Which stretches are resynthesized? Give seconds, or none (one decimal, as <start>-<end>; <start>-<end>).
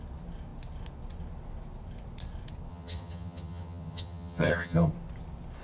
2.7-4.9